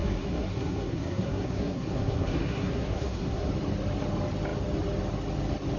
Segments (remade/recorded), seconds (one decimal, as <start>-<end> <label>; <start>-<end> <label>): 0.0-3.5 remade; 3.5-5.8 recorded